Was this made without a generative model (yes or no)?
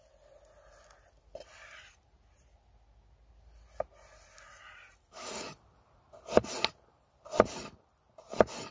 yes